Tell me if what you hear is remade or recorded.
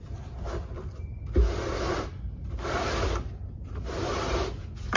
recorded